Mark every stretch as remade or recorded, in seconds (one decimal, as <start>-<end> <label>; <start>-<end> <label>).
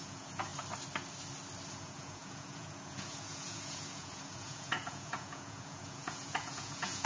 0.0-0.5 remade; 0.5-1.7 recorded; 1.7-7.1 remade